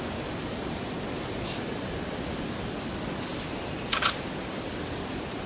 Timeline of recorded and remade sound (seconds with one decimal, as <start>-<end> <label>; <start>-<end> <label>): 0.0-5.5 recorded